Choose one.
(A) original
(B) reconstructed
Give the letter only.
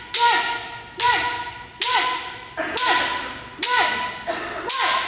A